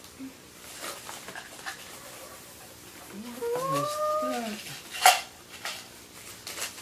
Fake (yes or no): no